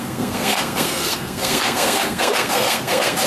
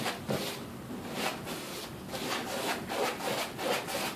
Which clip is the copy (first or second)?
first